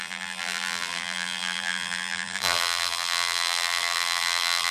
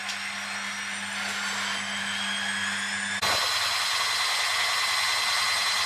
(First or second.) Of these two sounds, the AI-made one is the first